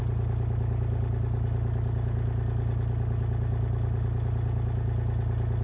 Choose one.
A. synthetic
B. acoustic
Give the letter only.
B